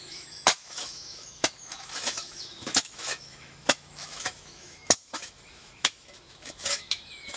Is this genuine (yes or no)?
no